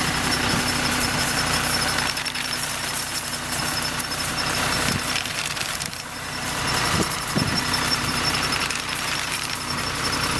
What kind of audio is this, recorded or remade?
remade